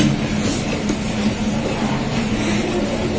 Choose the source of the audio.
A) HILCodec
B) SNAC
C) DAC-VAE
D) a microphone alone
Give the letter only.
D